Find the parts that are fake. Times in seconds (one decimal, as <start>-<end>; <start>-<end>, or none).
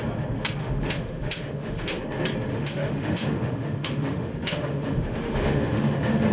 0.6-2.0; 2.5-6.3